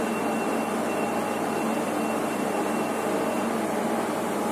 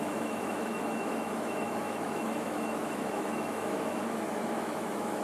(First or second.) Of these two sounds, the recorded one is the first